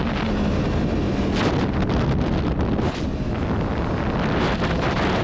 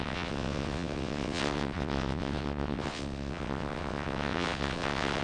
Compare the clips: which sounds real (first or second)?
first